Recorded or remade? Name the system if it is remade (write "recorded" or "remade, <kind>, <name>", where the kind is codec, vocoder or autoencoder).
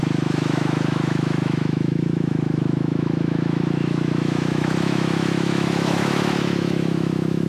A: remade, autoencoder, DAC-VAE